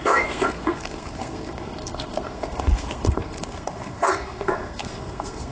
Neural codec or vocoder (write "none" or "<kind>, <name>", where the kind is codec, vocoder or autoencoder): codec, SNAC